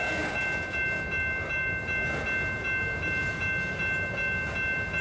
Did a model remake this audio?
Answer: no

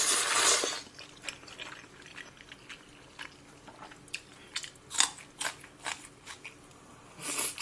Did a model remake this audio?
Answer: no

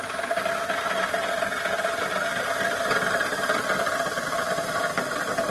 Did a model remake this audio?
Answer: yes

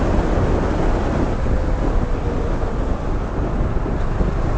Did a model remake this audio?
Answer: no